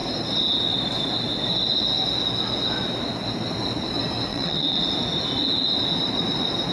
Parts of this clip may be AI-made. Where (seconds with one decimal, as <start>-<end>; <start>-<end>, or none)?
4.3-4.8